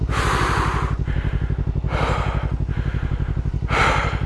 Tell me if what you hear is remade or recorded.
recorded